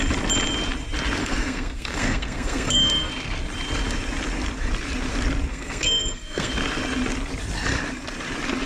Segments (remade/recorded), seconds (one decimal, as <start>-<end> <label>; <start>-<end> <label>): 0.0-1.2 recorded; 1.2-3.1 remade; 3.1-5.5 recorded; 5.5-6.5 remade; 6.5-8.7 recorded